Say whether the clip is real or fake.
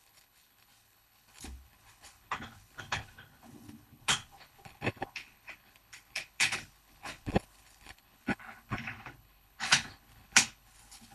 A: fake